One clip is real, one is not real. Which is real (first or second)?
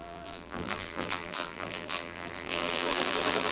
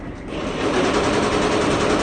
second